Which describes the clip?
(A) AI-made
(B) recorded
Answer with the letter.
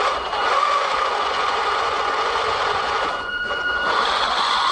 A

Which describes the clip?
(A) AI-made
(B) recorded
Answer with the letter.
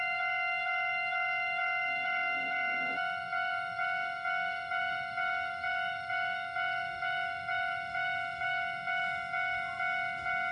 A